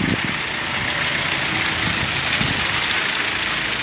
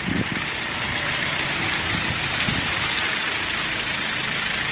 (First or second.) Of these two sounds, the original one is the first